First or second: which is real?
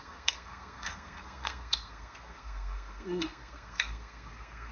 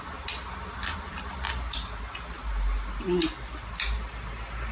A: second